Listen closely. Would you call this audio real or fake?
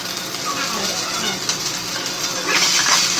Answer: real